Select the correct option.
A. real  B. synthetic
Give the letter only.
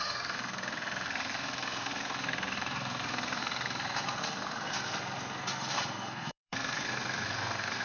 B